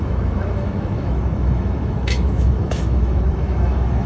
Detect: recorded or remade remade